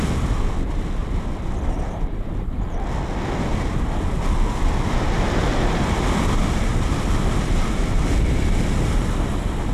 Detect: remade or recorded recorded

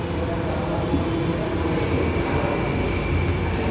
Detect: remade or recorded recorded